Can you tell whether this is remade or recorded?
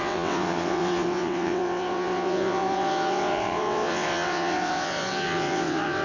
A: remade